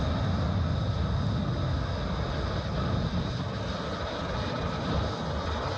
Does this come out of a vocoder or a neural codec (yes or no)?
no